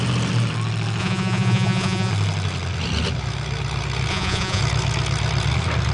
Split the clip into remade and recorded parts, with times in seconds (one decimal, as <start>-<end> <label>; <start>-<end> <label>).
0.0-1.0 recorded; 1.0-2.1 remade; 2.1-4.1 recorded; 4.1-4.6 remade; 4.6-5.9 recorded